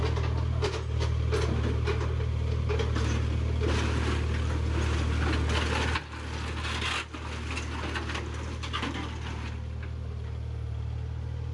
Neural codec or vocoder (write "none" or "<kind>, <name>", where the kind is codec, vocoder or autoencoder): none